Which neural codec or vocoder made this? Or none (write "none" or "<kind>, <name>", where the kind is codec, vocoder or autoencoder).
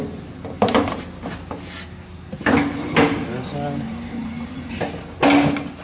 none